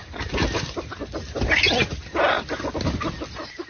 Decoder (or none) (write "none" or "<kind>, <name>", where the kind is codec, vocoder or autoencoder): none